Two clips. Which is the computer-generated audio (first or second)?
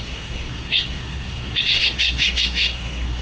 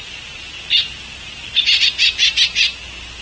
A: first